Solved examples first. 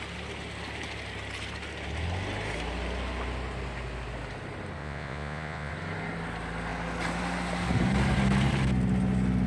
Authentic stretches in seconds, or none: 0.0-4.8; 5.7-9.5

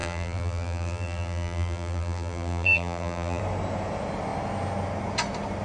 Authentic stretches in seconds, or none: 3.4-5.6